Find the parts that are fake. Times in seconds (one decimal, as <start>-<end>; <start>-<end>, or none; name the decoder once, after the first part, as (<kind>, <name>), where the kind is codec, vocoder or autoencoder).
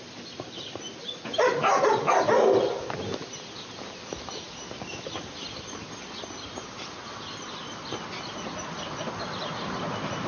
none